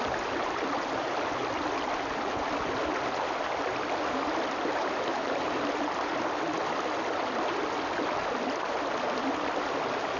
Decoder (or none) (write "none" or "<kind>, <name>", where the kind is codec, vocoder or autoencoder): none